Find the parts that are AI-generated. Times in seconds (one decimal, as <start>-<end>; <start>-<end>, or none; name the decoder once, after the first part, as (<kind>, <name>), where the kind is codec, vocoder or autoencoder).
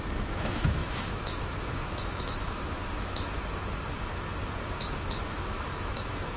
0.0-3.4 (autoencoder, DAC-VAE); 5.3-6.4